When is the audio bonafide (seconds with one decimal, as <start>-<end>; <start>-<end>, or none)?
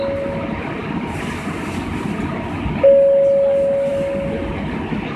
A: 0.0-5.2